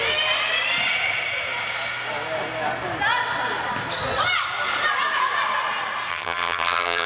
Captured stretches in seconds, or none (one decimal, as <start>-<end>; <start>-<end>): 0.0-6.1